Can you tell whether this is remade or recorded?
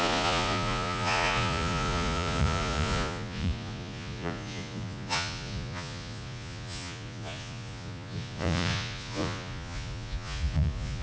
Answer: remade